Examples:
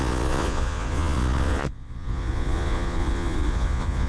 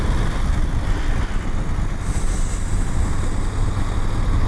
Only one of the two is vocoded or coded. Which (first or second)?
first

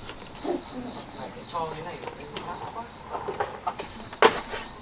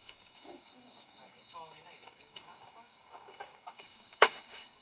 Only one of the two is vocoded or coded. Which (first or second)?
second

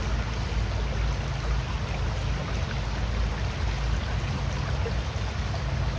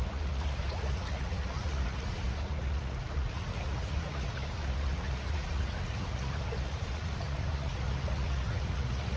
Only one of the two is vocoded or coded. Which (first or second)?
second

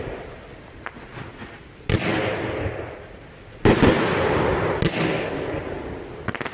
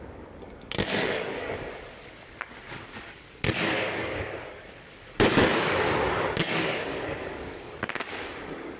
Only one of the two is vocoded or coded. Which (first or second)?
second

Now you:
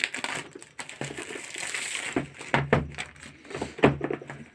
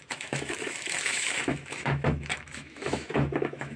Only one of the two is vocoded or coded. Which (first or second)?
second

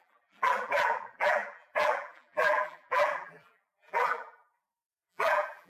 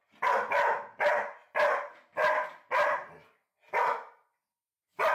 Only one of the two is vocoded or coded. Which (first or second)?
first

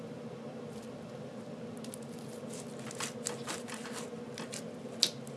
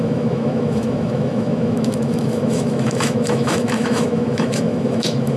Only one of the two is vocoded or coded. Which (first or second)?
second